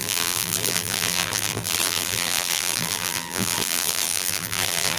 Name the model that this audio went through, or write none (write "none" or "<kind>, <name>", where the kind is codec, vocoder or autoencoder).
vocoder, BigVGAN v2